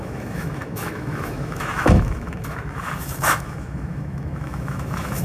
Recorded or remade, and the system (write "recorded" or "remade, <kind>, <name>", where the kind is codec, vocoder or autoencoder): remade, autoencoder, DAC-VAE